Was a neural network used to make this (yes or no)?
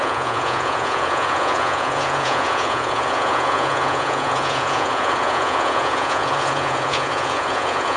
yes